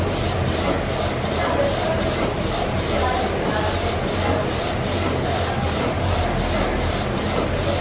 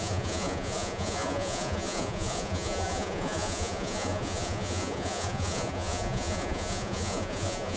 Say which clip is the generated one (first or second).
second